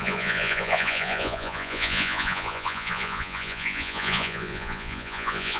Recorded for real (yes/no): no